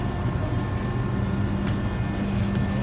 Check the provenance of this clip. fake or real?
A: real